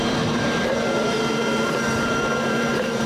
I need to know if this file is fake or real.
fake